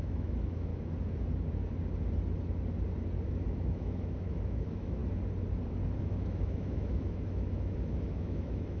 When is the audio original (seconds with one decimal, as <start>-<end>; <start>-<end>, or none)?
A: 0.7-3.3; 5.0-6.0